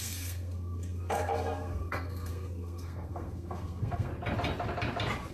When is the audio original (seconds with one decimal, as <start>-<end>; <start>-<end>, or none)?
4.1-5.3